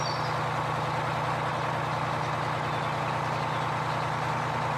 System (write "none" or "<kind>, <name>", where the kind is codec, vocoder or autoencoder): none